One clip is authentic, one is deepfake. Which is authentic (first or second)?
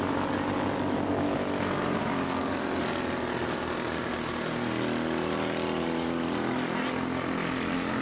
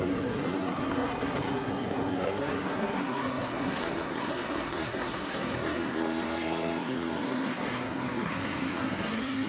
first